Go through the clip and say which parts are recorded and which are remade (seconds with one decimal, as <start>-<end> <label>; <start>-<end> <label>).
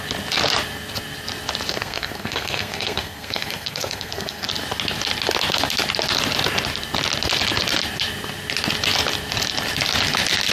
0.0-1.7 recorded; 1.7-4.5 remade; 4.5-10.5 recorded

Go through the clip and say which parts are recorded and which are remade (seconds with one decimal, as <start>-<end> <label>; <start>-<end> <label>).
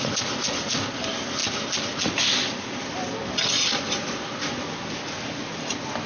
0.0-6.1 recorded